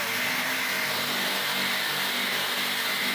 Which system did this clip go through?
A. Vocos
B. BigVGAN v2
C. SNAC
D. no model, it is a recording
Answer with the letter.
D